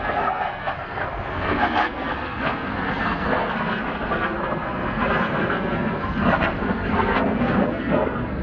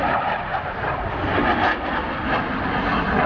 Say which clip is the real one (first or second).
second